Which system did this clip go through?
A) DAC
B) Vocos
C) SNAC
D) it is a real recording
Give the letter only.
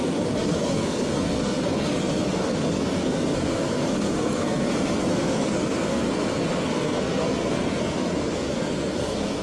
C